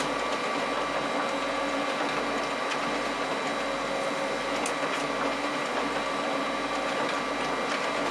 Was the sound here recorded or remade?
recorded